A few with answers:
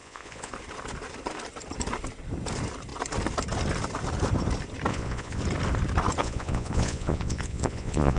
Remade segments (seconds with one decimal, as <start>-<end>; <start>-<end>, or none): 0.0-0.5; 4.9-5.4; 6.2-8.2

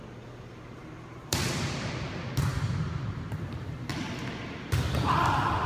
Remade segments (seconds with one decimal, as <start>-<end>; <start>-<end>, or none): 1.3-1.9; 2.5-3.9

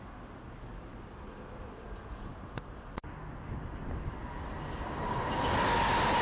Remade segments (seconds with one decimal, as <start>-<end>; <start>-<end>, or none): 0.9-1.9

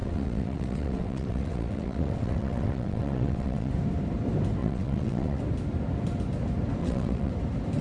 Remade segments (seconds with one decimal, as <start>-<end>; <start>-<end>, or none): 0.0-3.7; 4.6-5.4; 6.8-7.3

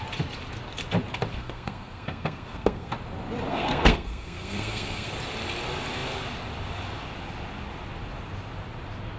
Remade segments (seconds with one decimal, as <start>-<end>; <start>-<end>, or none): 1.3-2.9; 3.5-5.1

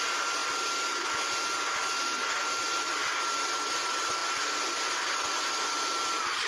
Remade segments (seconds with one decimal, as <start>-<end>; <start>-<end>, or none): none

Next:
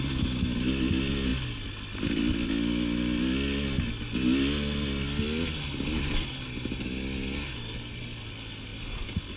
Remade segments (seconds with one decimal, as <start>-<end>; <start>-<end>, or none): none